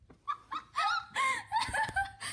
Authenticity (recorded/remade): recorded